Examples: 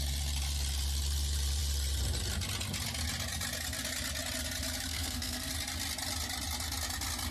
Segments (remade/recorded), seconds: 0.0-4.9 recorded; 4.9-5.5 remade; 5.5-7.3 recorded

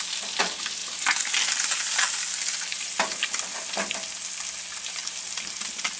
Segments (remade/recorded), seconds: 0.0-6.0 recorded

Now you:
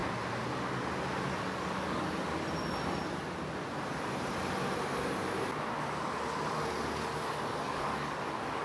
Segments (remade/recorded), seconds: 0.0-1.3 recorded; 1.3-2.3 remade; 2.3-7.4 recorded; 7.4-8.6 remade

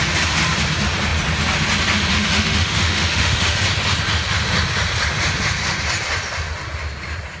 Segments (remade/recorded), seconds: 0.0-2.1 recorded; 2.1-3.6 remade; 3.6-7.4 recorded